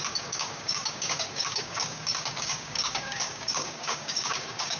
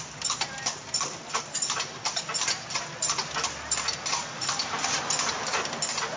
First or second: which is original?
second